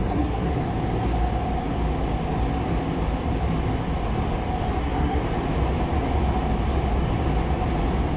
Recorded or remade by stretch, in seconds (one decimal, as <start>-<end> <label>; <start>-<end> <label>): 0.0-0.6 remade; 0.6-4.8 recorded; 4.8-5.2 remade; 5.2-8.2 recorded